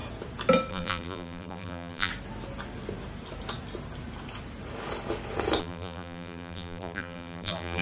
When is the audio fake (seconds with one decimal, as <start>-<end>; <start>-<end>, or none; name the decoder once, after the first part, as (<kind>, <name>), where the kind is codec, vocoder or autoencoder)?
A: 0.7-2.1 (vocoder, BigVGAN v2); 5.6-7.8